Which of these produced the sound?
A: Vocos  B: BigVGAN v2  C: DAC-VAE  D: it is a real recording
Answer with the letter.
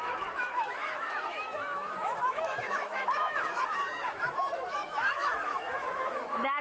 C